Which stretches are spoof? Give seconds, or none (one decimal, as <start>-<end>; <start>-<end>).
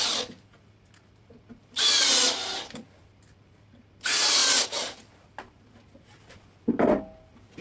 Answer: none